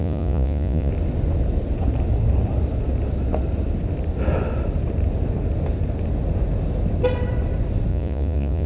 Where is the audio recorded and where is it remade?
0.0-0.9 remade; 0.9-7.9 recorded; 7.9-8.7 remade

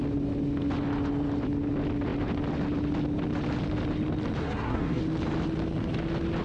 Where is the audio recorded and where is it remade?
0.0-4.4 recorded; 4.4-5.0 remade; 5.0-6.4 recorded

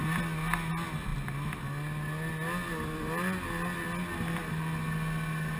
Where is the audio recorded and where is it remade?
0.0-5.6 recorded